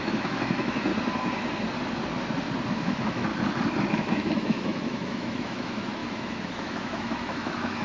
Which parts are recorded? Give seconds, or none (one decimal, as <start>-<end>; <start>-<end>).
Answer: 0.9-2.7; 3.3-3.9